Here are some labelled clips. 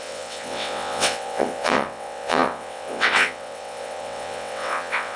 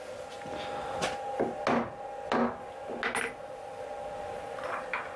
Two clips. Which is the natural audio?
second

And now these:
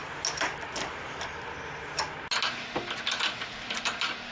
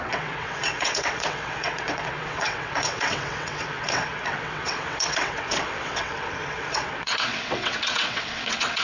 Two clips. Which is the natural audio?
first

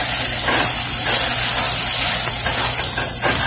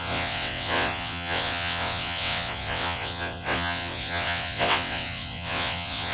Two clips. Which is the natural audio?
first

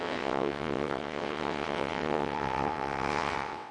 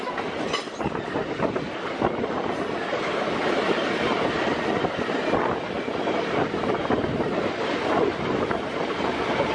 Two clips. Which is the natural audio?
second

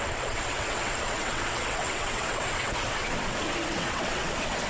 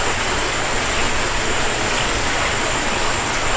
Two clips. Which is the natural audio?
second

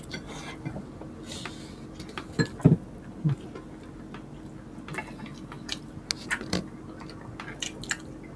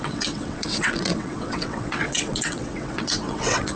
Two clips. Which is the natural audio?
first